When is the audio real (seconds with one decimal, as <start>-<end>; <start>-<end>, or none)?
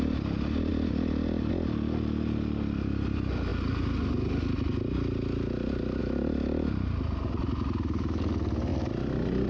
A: 0.0-9.5